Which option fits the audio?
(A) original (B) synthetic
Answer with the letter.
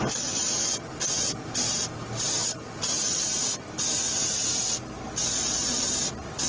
A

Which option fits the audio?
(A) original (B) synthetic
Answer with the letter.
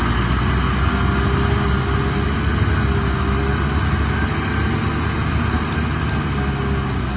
A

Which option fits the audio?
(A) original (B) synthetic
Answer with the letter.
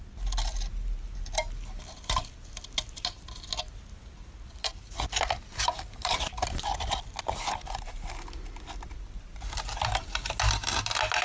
A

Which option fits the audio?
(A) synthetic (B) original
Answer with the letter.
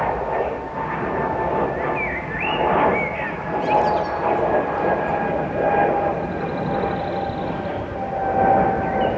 B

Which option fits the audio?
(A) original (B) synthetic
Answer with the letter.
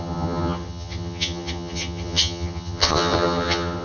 B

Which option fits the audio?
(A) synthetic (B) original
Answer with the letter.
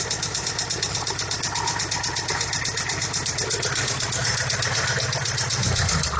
B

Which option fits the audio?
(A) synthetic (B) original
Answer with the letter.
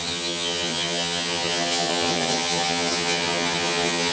A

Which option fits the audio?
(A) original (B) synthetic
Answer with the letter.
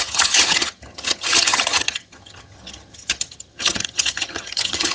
B